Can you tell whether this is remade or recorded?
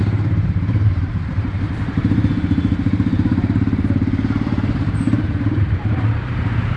remade